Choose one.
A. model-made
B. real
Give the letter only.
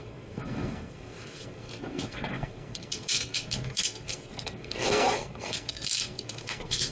A